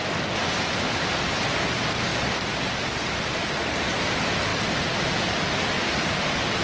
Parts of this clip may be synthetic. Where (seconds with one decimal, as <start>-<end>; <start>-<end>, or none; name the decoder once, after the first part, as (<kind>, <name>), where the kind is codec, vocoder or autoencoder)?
none